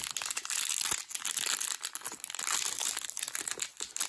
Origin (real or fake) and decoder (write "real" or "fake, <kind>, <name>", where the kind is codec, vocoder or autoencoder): real